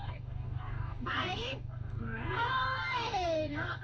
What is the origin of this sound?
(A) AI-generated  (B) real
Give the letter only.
A